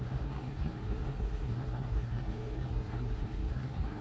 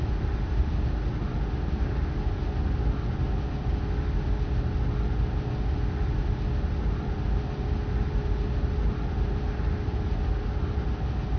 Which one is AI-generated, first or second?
first